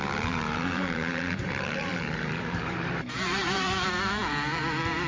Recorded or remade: remade